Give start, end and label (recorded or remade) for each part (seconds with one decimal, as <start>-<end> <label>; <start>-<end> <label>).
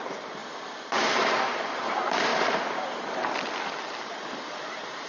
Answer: 0.0-0.4 remade; 0.4-0.9 recorded; 0.9-2.3 remade; 2.3-3.8 recorded; 3.8-5.1 remade